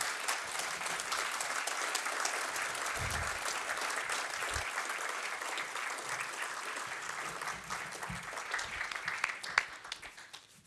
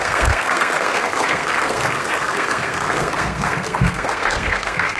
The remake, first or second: second